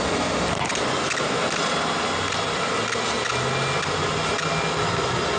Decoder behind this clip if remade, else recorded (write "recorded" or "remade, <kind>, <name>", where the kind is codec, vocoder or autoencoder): recorded